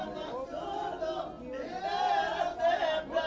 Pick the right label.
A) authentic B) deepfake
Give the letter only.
A